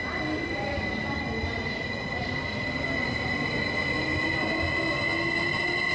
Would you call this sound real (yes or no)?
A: yes